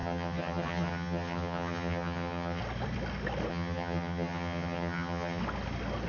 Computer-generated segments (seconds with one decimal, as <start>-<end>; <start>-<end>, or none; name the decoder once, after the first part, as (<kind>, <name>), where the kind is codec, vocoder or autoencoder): 0.0-2.6 (vocoder, HiFi-GAN); 3.5-5.4